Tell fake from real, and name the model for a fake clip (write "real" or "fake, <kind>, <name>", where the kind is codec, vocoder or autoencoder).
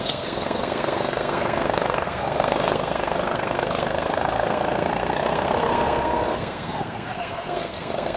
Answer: fake, codec, SNAC